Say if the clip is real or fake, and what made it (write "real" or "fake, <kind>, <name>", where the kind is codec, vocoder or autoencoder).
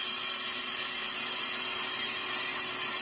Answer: real